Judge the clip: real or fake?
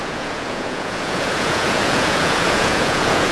fake